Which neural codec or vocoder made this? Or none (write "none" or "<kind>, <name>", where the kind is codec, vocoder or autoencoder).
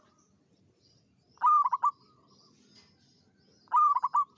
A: none